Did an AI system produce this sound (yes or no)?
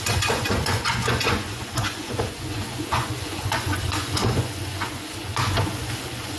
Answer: yes